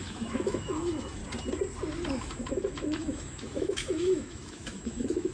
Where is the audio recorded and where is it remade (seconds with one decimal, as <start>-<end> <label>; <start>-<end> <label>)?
0.0-1.2 remade; 1.2-2.2 recorded; 2.2-5.3 remade